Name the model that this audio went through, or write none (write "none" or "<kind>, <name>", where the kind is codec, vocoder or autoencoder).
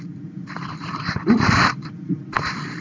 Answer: none